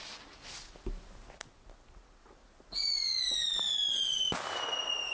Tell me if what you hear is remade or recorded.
recorded